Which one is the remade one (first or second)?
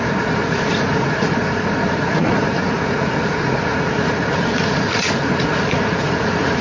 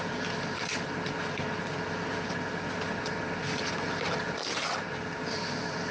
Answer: first